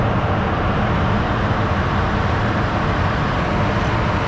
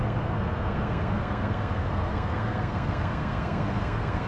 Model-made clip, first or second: second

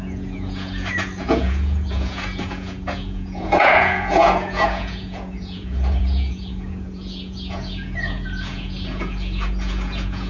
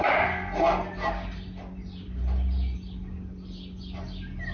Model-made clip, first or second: first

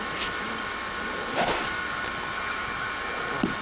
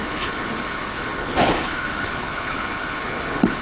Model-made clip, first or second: second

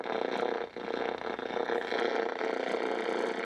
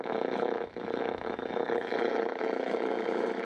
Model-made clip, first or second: second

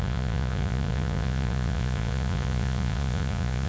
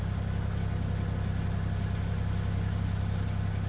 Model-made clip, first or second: first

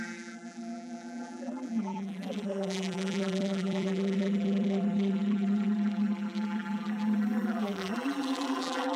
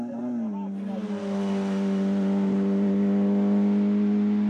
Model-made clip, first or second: first